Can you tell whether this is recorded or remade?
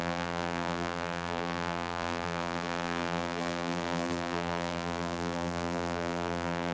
remade